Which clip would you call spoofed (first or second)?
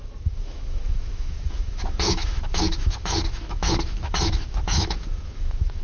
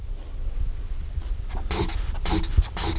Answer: first